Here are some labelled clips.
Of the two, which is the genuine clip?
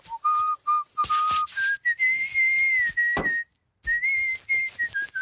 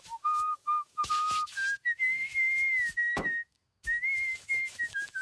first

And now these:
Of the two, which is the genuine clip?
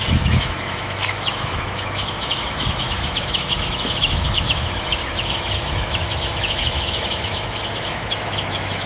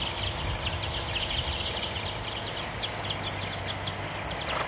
second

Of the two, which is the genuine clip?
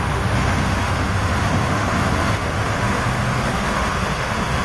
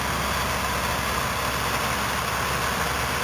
second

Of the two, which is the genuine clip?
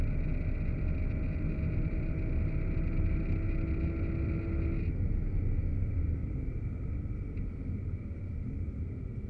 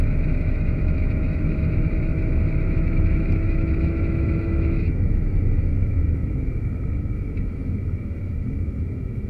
first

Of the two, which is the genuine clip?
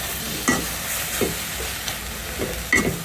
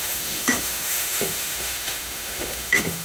first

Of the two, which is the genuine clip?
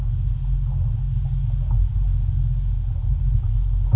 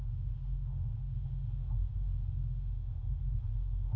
first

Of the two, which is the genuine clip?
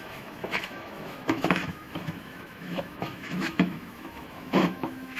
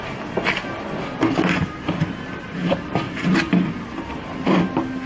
second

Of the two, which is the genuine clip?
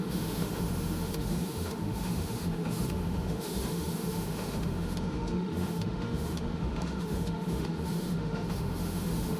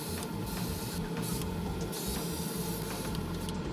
second